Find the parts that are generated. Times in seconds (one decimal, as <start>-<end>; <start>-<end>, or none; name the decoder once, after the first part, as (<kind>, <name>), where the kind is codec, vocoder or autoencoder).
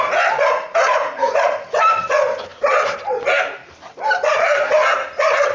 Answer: 1.0-1.5 (vocoder, Vocos)